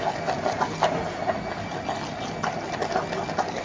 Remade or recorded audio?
recorded